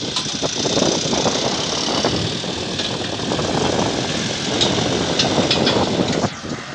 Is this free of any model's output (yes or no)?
yes